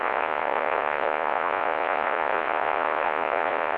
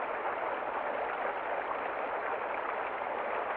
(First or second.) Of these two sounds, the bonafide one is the second